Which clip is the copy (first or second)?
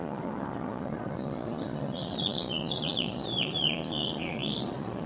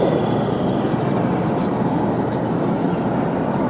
first